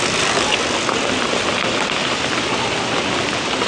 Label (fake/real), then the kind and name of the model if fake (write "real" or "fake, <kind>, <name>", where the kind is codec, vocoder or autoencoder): real